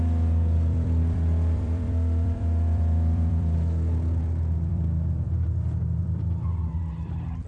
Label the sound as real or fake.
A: fake